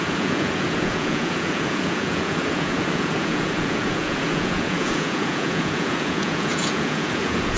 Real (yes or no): no